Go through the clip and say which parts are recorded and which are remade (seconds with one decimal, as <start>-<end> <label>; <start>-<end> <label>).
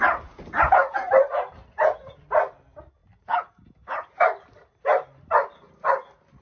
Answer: 0.0-6.4 recorded